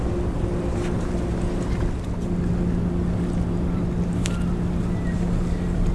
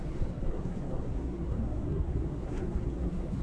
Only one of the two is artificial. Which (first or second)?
second